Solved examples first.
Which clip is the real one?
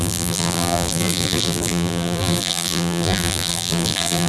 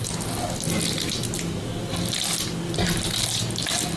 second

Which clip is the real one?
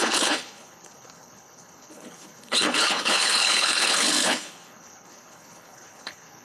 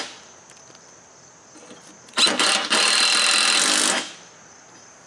second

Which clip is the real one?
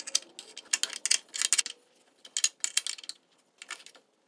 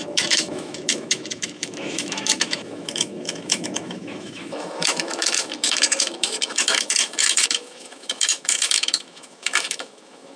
first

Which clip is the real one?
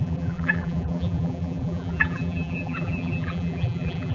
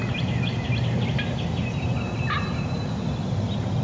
second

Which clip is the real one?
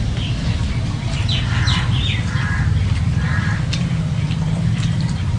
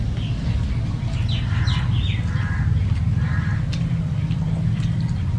second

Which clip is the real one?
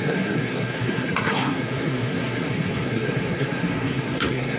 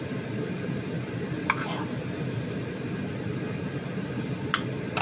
second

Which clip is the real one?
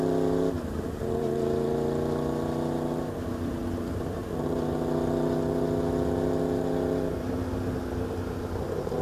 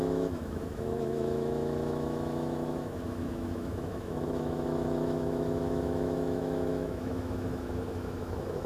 first